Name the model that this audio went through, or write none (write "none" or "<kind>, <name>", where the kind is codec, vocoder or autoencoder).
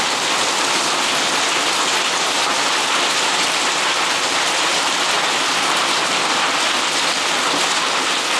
none